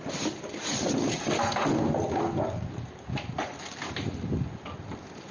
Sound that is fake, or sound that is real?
real